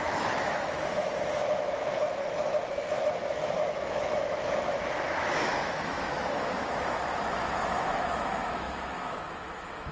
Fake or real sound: fake